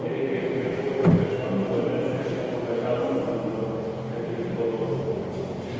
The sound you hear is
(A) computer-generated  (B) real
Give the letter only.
B